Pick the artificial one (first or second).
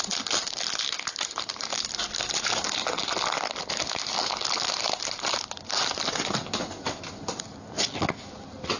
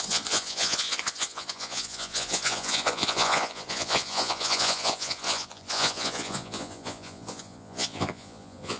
second